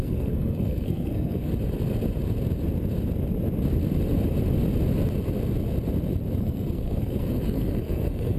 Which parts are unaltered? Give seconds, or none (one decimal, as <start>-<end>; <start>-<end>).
1.5-6.4